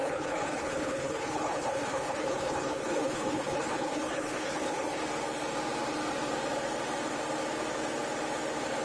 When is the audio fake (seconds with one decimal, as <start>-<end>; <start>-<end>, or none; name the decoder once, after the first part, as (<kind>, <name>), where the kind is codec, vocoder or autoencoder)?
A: 0.0-5.0 (codec, HILCodec)